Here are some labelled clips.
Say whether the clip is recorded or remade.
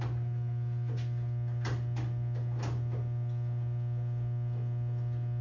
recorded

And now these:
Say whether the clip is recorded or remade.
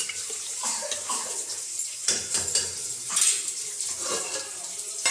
remade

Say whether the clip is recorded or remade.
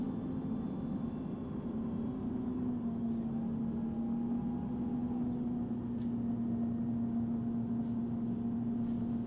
recorded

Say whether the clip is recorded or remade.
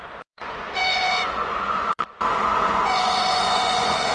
remade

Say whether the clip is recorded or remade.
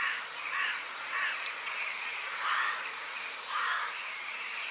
remade